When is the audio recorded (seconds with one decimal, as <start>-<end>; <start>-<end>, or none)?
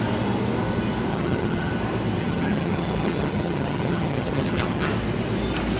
0.0-1.1; 1.7-2.2; 4.9-5.8